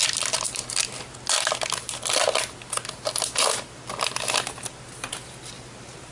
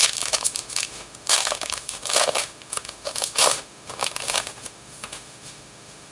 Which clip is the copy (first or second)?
second